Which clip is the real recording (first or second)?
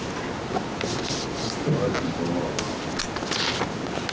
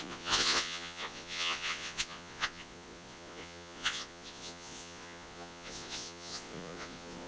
first